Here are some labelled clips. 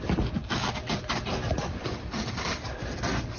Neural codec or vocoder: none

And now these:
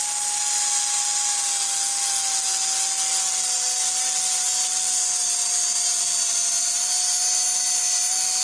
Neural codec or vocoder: none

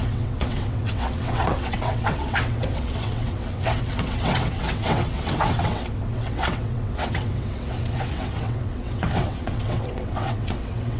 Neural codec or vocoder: vocoder, WaveNeXt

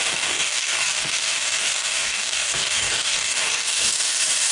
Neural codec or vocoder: codec, DAC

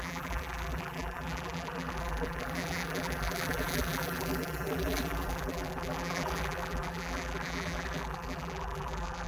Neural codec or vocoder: vocoder, BigVGAN v2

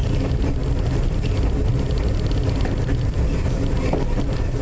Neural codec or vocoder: none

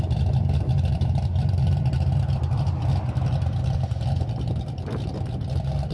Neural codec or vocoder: vocoder, BigVGAN v2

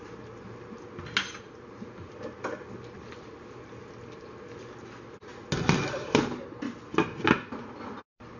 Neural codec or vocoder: none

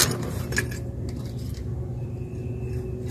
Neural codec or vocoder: none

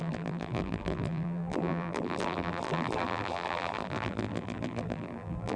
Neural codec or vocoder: vocoder, BigVGAN v2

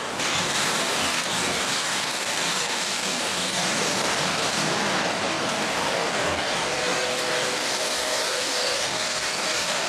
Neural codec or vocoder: codec, DAC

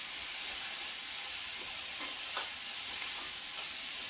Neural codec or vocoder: vocoder, BigVGAN v2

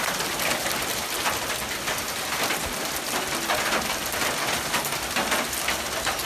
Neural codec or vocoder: none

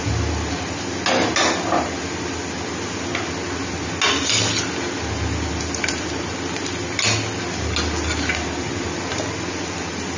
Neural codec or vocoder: none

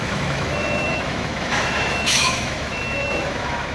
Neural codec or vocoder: autoencoder, DAC-VAE